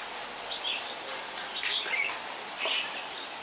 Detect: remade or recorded recorded